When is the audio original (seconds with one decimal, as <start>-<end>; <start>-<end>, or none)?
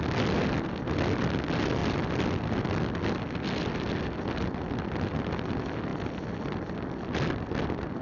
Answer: 0.0-8.0